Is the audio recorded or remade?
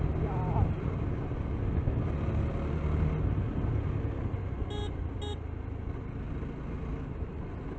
recorded